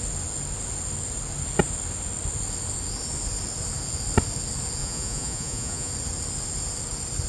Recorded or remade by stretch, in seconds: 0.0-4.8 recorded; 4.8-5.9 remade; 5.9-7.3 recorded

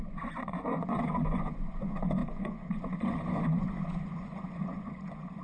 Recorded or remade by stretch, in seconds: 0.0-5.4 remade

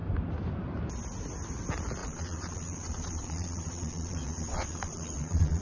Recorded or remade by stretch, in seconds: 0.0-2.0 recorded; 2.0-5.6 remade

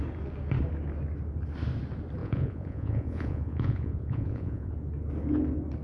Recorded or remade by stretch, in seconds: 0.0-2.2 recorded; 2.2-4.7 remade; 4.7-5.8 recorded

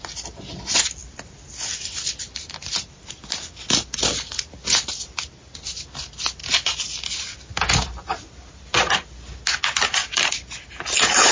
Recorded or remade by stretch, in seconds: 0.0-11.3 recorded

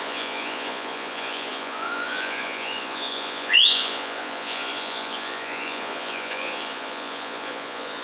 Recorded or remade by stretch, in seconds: 0.0-8.0 remade

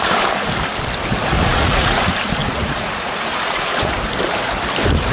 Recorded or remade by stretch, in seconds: 0.0-1.5 recorded; 1.5-2.0 remade; 2.0-2.4 recorded; 2.4-3.9 remade; 3.9-5.1 recorded